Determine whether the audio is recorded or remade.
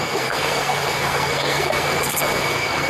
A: remade